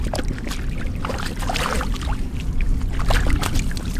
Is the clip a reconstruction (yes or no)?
no